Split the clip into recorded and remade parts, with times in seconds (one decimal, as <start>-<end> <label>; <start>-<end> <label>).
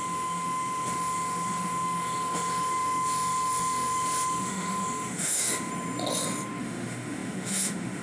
0.0-5.7 remade; 5.7-6.6 recorded; 6.6-8.0 remade